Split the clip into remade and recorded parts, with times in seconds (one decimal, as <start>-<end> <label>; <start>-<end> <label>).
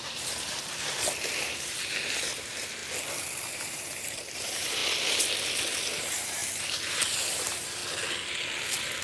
0.0-2.8 remade; 2.8-3.5 recorded; 3.5-4.8 remade; 4.8-6.0 recorded; 6.0-7.8 remade; 7.8-9.0 recorded